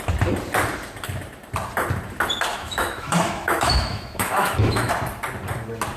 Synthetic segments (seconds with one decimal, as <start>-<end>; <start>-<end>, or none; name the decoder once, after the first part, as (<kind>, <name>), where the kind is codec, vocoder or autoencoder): 2.5-4.9 (autoencoder, DAC-VAE)